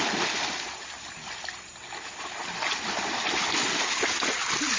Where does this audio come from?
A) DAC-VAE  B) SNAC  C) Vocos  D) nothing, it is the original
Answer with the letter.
D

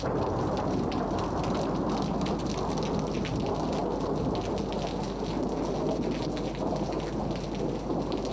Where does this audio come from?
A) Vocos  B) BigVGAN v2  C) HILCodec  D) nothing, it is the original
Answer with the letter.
D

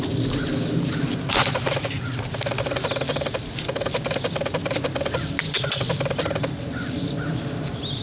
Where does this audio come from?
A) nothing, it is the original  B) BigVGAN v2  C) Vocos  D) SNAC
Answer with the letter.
A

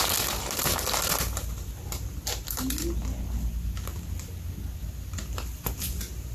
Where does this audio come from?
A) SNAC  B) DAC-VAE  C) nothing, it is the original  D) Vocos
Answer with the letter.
C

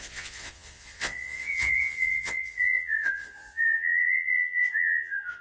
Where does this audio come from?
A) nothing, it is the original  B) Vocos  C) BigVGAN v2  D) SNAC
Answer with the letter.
B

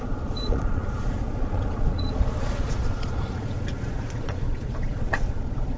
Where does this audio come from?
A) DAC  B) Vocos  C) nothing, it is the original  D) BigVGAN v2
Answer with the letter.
B